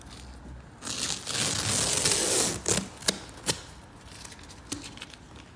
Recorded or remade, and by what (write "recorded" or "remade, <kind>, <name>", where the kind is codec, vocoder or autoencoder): recorded